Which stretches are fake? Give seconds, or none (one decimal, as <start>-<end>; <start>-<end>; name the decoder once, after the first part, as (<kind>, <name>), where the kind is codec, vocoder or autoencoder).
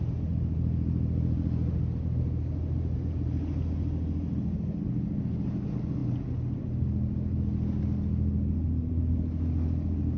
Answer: none